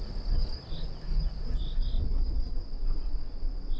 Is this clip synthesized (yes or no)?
no